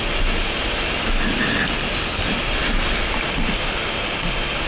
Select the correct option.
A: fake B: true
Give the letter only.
B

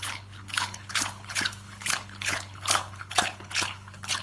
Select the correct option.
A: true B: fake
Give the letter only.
B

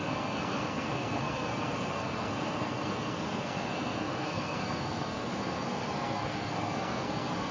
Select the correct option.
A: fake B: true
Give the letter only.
A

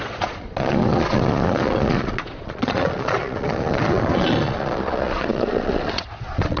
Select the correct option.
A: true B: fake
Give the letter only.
B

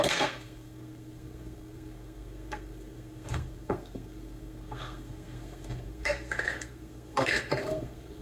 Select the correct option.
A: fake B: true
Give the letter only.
A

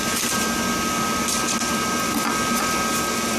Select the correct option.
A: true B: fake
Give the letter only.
A